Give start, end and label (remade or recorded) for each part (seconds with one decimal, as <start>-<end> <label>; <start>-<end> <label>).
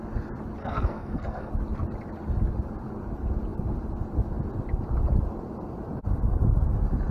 0.0-0.6 recorded; 0.6-1.5 remade; 1.5-7.1 recorded